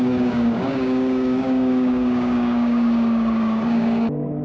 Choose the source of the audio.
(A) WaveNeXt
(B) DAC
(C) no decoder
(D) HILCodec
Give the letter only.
B